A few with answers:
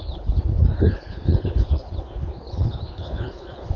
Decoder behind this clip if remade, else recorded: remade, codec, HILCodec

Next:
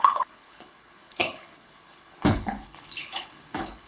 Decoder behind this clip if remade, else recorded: remade, codec, HILCodec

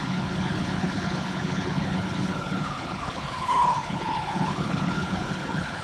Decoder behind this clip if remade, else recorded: remade, codec, HILCodec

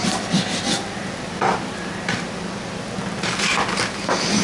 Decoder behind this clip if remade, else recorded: recorded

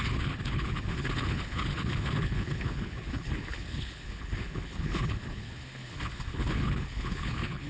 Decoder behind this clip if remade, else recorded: remade, codec, HILCodec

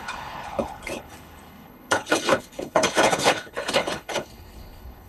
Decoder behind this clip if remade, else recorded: remade, codec, HILCodec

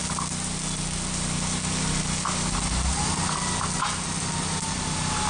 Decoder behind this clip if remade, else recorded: recorded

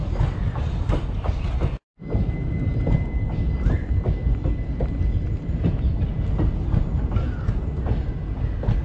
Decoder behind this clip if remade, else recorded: recorded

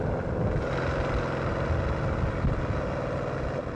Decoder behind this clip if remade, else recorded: recorded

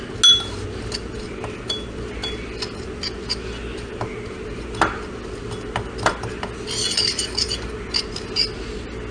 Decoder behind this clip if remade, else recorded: recorded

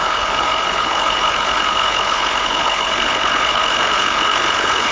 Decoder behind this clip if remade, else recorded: remade, codec, HILCodec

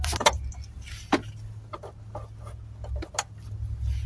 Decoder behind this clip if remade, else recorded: recorded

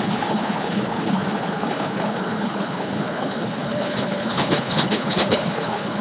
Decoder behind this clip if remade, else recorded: remade, codec, HILCodec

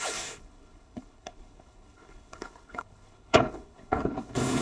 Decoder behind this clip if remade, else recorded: remade, codec, HILCodec